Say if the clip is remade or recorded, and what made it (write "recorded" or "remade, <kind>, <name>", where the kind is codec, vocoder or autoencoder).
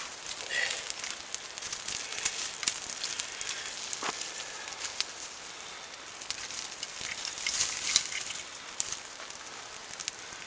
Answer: recorded